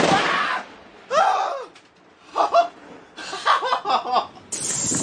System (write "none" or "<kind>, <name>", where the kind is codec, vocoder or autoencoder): none